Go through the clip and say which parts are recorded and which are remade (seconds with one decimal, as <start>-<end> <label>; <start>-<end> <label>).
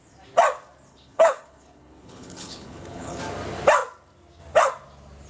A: 0.0-0.9 recorded; 0.9-3.2 remade; 3.2-5.3 recorded